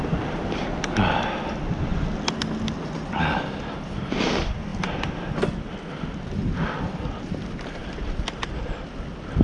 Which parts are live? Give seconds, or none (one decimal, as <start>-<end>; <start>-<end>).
1.9-3.2; 4.7-5.7